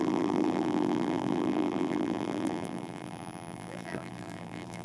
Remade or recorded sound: remade